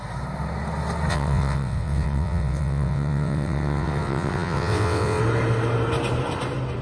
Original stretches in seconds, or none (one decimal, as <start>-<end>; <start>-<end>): 0.0-1.1; 5.2-6.8